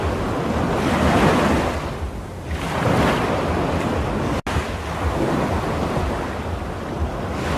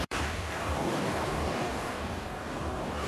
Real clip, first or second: first